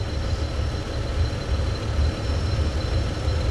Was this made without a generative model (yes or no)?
yes